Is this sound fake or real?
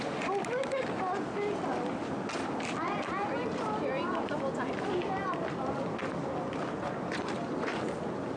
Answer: real